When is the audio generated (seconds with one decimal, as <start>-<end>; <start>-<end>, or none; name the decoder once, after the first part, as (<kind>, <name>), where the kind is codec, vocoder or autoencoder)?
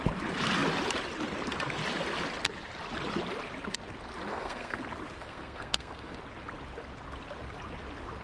4.3-4.8 (codec, SNAC); 5.2-6.2